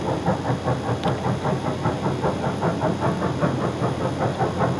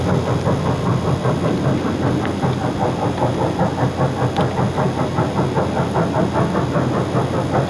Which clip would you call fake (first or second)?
first